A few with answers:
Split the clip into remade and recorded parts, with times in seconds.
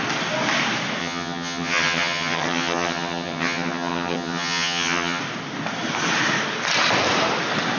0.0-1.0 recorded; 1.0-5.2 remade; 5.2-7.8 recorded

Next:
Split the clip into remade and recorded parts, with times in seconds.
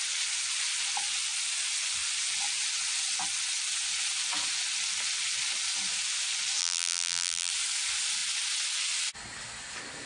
0.0-6.6 recorded; 6.6-7.5 remade; 7.5-10.1 recorded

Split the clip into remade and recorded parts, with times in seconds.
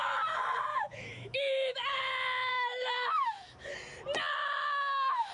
0.0-0.7 recorded; 0.7-2.1 remade; 2.1-2.5 recorded; 2.5-3.7 remade; 3.7-4.4 recorded; 4.4-5.3 remade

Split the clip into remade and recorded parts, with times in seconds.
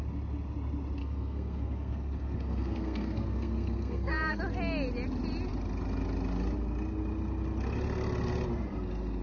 0.0-1.0 recorded; 1.0-4.4 remade; 4.4-9.2 recorded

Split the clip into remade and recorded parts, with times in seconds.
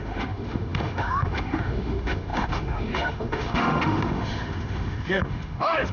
0.0-5.9 remade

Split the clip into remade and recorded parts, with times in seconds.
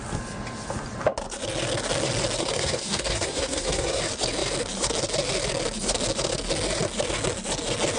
0.0-2.4 recorded; 2.4-4.0 remade; 4.0-8.0 recorded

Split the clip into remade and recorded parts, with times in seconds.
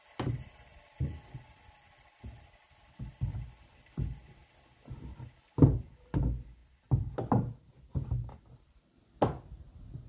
0.0-10.1 recorded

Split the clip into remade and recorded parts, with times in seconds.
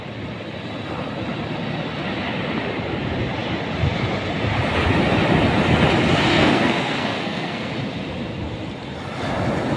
0.0-6.3 recorded; 6.3-7.7 remade; 7.7-9.8 recorded